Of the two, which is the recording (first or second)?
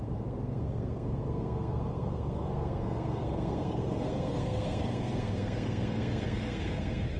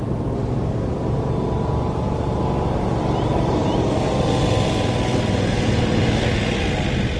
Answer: second